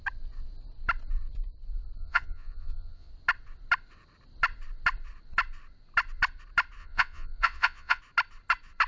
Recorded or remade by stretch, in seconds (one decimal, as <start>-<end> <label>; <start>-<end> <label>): 0.0-2.0 recorded; 2.0-3.1 remade; 3.1-6.8 recorded; 6.8-8.0 remade; 8.0-8.9 recorded